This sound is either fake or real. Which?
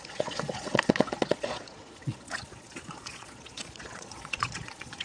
fake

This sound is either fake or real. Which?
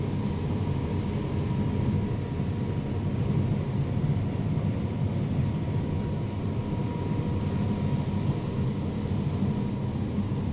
real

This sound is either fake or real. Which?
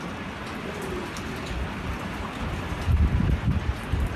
real